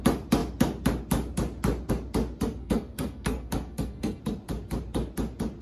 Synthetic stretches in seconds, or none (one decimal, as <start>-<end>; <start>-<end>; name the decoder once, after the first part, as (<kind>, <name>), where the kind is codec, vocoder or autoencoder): 2.6-4.2 (codec, SNAC)

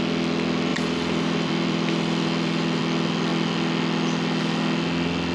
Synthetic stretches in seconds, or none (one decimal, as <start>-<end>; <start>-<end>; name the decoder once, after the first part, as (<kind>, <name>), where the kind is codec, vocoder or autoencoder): 0.7-2.8 (vocoder, BigVGAN v2)

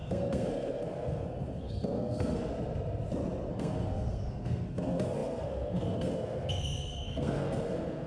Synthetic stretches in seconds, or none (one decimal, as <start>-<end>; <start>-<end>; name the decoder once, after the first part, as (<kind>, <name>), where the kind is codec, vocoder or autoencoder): 0.0-2.5 (codec, SNAC); 3.5-8.1

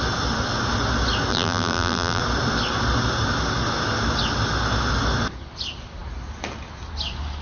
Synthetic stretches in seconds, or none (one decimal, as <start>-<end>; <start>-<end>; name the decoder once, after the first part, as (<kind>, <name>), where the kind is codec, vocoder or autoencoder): 1.3-2.2 (vocoder, BigVGAN v2)

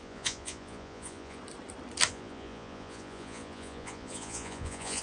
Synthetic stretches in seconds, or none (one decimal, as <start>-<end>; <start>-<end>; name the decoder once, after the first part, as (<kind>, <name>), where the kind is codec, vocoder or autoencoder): 0.0-1.4 (vocoder, Vocos); 2.1-5.0

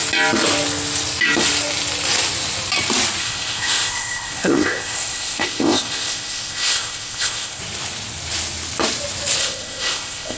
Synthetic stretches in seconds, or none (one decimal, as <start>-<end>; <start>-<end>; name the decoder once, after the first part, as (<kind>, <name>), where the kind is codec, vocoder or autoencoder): 3.2-7.6 (codec, ZipCodec); 9.4-10.4

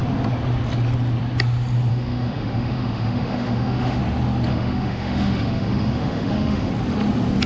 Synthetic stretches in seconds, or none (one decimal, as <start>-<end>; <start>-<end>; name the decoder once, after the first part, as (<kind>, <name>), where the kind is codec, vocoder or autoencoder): 1.9-4.0 (autoencoder, DAC-VAE); 4.5-6.7

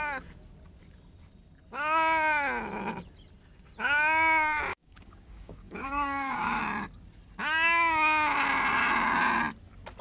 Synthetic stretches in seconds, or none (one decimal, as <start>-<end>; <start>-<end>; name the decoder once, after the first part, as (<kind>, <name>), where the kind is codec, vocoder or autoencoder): 4.7-6.6 (codec, DAC)